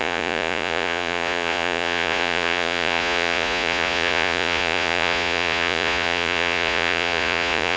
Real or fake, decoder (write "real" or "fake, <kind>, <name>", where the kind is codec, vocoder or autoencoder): fake, vocoder, Vocos